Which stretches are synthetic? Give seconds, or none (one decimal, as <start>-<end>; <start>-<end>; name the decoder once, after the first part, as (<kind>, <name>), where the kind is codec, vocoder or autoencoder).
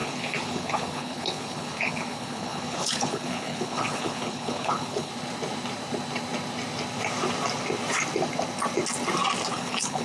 0.0-5.1 (codec, HILCodec); 9.5-10.0